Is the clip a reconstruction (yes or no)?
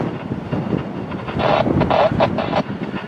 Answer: no